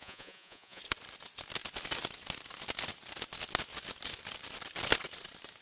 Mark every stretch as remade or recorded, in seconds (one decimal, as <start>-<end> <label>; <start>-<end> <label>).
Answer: 0.0-0.8 remade; 0.8-5.6 recorded